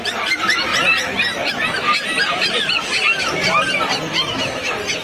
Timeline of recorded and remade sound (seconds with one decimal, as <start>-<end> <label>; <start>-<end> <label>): 0.0-0.7 recorded; 0.7-1.5 remade; 1.5-5.0 recorded